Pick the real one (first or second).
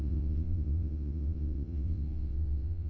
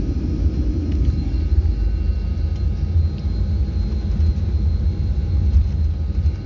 second